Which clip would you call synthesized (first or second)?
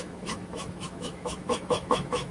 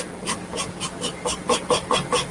first